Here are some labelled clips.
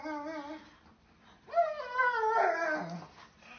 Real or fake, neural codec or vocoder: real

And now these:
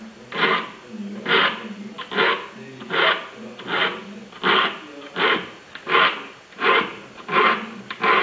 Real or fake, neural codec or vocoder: real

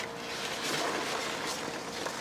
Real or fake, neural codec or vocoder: real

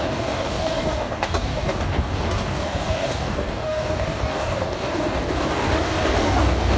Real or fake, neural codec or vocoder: fake, codec, DAC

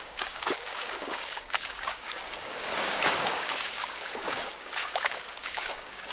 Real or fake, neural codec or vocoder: fake, codec, DAC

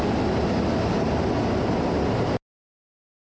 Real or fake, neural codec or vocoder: real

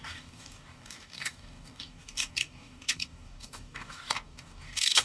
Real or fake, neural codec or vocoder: fake, codec, DAC